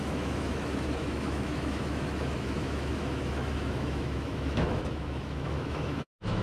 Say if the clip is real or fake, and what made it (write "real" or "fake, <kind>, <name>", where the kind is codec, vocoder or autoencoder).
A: fake, autoencoder, DAC-VAE